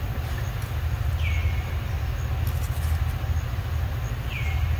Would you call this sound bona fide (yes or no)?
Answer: yes